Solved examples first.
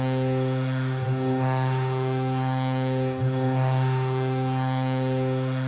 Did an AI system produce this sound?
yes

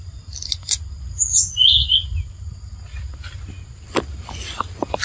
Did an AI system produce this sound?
no